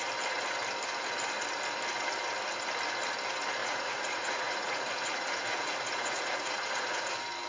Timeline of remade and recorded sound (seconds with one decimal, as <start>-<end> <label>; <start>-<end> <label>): 0.0-3.6 recorded; 3.6-7.1 remade; 7.1-7.5 recorded